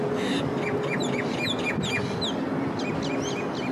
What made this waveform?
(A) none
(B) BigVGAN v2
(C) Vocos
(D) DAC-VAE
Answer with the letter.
A